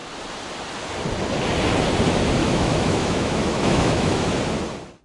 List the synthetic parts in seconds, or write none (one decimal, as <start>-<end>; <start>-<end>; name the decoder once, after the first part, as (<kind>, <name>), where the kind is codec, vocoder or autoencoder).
2.4-4.4 (autoencoder, DAC-VAE)